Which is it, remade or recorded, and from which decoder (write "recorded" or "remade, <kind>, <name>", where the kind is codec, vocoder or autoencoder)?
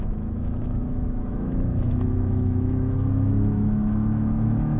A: remade, autoencoder, DAC-VAE